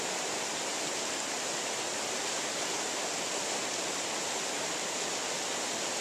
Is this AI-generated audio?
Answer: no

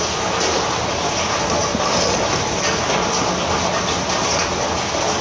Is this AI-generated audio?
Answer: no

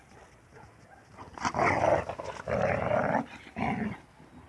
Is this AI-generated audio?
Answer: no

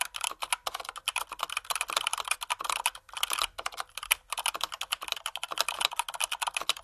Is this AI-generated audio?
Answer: no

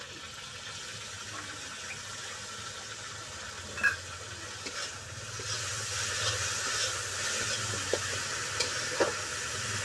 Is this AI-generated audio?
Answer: no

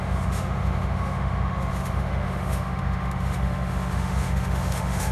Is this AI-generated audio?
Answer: yes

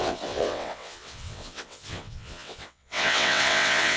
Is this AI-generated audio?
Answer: yes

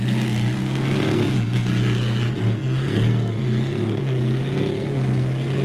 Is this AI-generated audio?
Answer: yes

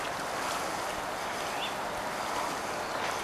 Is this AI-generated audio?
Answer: no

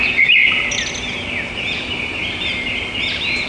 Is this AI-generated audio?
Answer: no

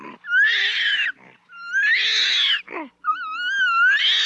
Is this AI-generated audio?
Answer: no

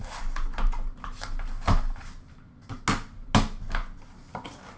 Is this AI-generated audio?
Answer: no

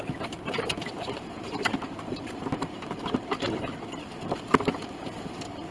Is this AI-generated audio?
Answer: yes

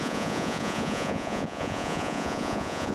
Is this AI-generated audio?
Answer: yes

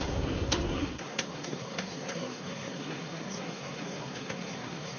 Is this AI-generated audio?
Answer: yes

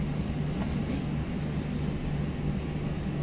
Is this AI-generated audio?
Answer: no